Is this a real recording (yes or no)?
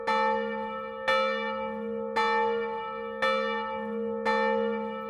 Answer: yes